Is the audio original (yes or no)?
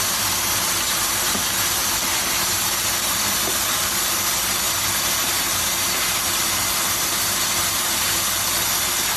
yes